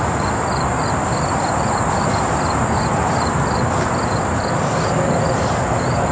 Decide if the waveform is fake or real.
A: fake